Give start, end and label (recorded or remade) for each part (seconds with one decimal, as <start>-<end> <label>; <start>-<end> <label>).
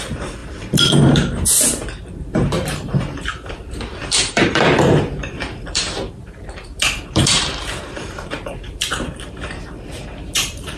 0.0-10.8 remade